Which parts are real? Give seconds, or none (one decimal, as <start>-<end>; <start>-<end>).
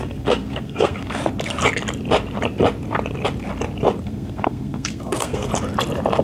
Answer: 1.2-4.0; 5.5-6.2